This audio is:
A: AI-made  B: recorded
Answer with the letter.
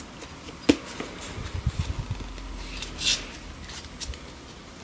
B